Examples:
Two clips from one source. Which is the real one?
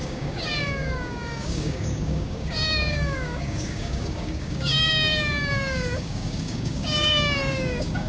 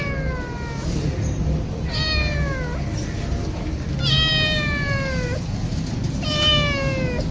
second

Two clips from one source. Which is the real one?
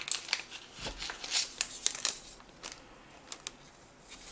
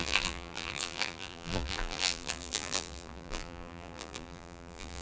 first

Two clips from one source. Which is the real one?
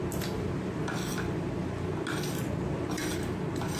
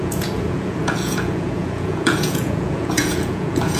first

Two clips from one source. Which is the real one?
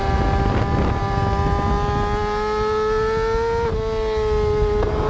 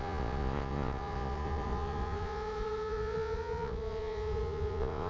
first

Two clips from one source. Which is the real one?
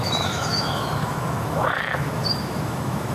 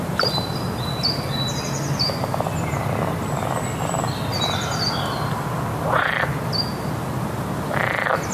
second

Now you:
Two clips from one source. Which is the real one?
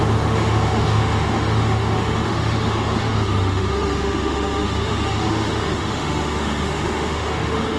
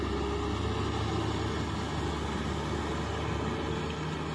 second